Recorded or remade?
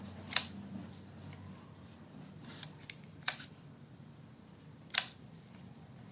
remade